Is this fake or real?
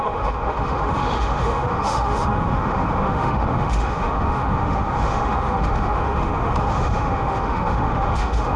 fake